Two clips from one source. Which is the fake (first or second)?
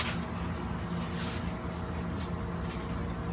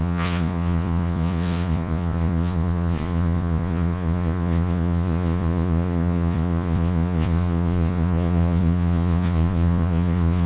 second